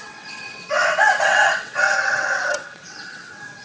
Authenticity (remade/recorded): remade